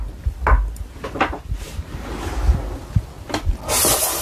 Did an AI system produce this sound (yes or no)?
no